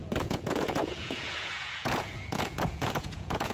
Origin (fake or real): fake